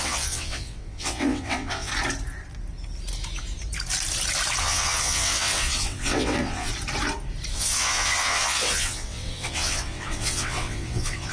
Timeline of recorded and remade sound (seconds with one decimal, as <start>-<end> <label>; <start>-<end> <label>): 0.0-1.9 remade; 1.9-4.6 recorded; 4.6-6.7 remade; 6.7-7.5 recorded; 7.5-11.3 remade